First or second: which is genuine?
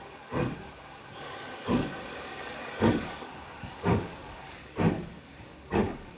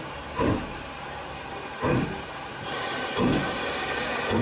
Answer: second